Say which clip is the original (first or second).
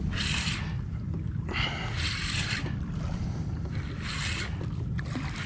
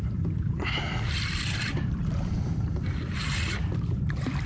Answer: first